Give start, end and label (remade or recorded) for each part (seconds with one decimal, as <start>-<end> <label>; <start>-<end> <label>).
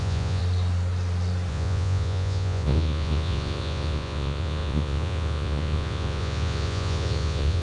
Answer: 0.0-0.4 remade; 0.4-1.5 recorded; 1.5-7.6 remade